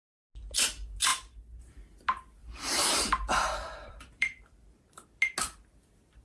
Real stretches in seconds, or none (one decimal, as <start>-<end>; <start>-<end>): 0.0-2.4; 4.8-6.2